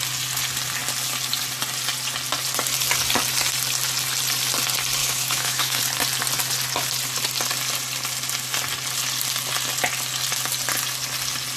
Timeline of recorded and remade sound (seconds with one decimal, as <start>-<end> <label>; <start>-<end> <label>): 0.0-5.0 recorded; 5.0-5.8 remade; 5.8-11.6 recorded